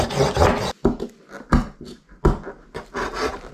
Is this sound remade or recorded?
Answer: recorded